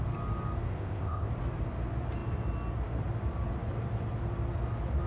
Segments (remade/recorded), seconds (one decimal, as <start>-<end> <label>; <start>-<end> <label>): 0.0-0.7 recorded; 0.7-1.3 remade; 1.3-5.1 recorded